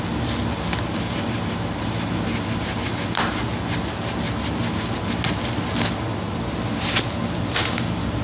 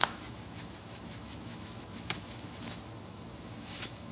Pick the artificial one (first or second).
second